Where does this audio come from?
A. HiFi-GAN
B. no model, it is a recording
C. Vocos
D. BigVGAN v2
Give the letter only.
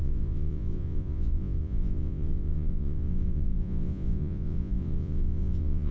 C